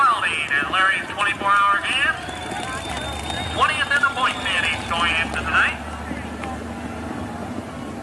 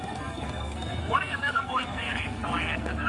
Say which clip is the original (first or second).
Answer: first